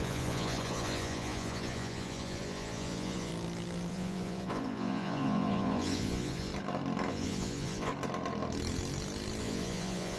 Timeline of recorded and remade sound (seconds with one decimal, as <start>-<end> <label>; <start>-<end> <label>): 0.0-3.3 remade; 3.3-3.9 recorded; 3.9-6.5 remade; 6.5-7.1 recorded; 7.1-7.9 remade; 7.9-9.4 recorded; 9.4-10.2 remade